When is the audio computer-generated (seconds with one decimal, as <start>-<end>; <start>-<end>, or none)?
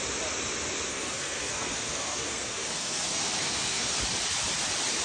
0.9-3.9